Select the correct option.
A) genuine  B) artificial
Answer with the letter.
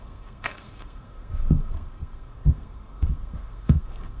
B